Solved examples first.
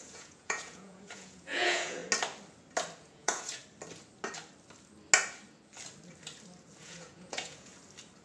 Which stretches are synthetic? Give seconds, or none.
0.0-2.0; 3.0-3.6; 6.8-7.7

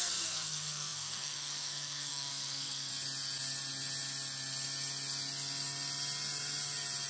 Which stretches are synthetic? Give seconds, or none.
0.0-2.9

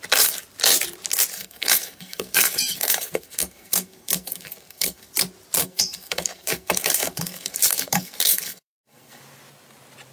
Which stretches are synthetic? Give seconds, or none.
1.3-5.1; 5.6-9.2

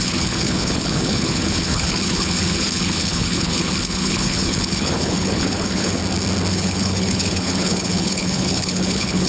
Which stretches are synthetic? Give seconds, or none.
0.0-6.0; 6.5-9.3

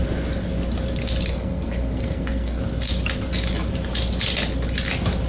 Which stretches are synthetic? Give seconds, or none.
1.3-2.6